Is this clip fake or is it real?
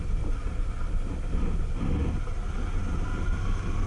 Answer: real